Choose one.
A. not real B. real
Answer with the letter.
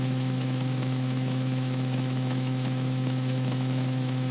A